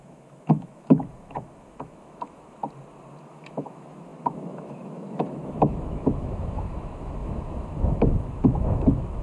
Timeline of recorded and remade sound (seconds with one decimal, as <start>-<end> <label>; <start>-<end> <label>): 0.0-2.6 remade; 2.6-3.2 recorded; 3.2-9.2 remade